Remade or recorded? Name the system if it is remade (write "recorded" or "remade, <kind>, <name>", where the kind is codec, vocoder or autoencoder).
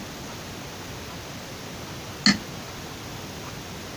recorded